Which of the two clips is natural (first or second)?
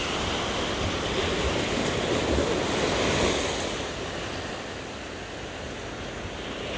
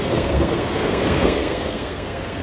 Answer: first